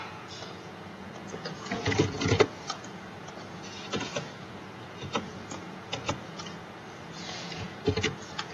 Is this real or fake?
fake